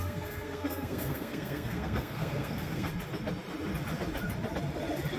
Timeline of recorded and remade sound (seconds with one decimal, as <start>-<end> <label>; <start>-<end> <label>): 0.0-2.9 remade; 2.9-5.2 recorded